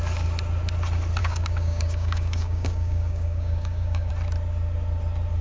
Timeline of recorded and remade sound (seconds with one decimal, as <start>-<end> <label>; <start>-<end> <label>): 0.0-1.2 recorded; 1.2-4.1 remade; 4.1-5.4 recorded